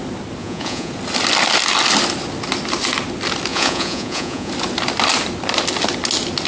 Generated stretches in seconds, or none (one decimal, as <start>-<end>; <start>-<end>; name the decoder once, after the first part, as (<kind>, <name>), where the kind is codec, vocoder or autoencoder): 0.4-0.9 (vocoder, Vocos); 3.5-4.5